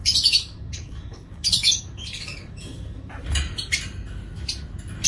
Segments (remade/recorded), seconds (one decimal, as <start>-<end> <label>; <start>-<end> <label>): 0.0-3.1 remade; 3.1-5.1 recorded